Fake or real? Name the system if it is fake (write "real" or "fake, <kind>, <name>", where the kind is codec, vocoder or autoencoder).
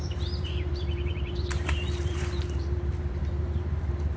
fake, vocoder, BigVGAN v2